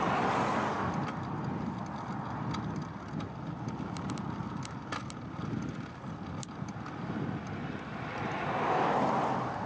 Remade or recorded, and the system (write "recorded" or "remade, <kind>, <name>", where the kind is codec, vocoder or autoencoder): recorded